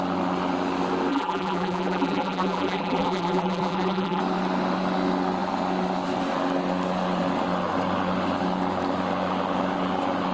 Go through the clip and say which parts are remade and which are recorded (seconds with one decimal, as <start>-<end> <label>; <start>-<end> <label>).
0.0-1.1 recorded; 1.1-4.2 remade; 4.2-10.3 recorded

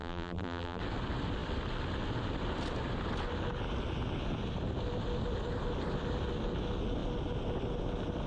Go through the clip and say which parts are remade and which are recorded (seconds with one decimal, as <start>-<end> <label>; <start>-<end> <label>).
0.0-0.8 remade; 0.8-8.3 recorded

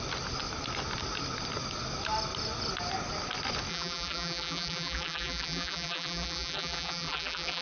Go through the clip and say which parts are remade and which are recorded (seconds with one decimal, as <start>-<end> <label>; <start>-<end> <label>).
0.0-3.7 recorded; 3.7-7.6 remade